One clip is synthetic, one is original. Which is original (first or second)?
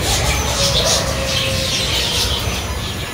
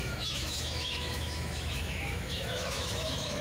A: first